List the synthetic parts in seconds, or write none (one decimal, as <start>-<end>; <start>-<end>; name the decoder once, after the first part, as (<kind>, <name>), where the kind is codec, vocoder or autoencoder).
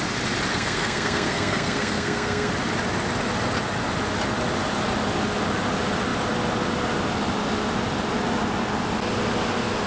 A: 0.5-2.5 (codec, SNAC)